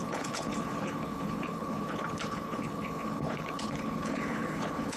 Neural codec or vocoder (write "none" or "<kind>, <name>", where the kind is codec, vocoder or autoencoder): codec, HILCodec